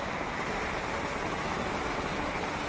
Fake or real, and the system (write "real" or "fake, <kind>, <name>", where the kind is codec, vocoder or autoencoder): real